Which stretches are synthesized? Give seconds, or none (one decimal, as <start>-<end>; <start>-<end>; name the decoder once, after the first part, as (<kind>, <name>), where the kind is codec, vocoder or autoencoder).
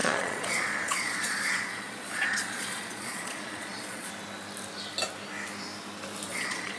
0.0-4.1 (vocoder, Vocos); 6.3-6.8